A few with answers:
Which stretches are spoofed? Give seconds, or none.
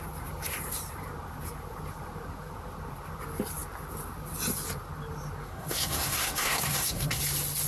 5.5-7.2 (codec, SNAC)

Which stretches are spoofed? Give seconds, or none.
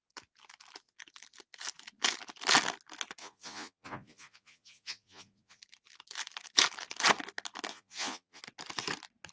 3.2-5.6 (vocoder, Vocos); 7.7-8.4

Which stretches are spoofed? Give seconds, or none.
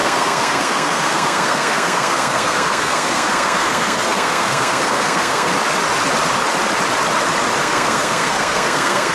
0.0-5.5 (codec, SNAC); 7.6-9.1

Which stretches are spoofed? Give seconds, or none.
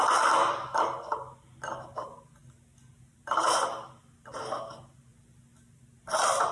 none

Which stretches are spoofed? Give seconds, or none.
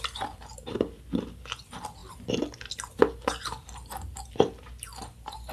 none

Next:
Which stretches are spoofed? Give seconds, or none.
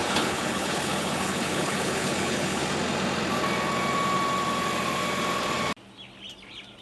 0.0-2.6 (codec, HILCodec)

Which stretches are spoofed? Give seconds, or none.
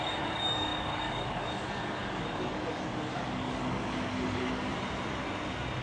0.0-4.7 (codec, DAC)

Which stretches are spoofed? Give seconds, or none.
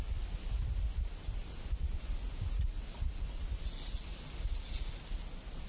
none